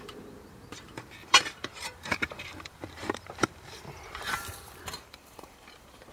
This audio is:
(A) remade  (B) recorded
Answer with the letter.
A